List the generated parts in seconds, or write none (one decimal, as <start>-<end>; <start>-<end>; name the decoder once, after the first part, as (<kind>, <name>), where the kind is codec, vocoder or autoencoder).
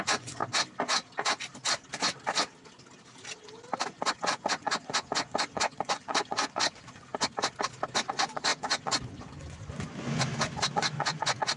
0.0-0.4 (vocoder, Vocos); 4.1-7.1; 8.1-11.6